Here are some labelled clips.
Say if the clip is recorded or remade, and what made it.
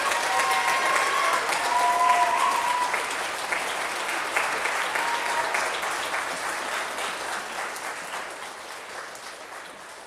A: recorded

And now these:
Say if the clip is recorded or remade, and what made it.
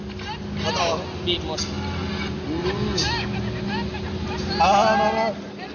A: recorded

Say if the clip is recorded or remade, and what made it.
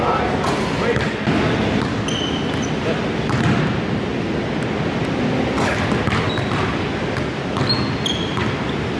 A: recorded